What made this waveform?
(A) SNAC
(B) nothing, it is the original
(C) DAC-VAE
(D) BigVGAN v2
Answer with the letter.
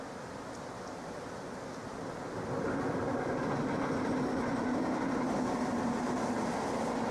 B